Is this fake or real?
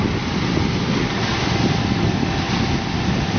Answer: real